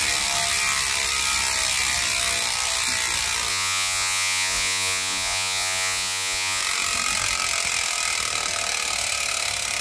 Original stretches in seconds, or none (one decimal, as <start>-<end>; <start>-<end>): 0.0-3.5; 6.6-9.8